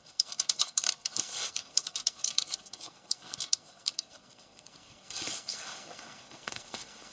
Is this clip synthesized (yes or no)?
yes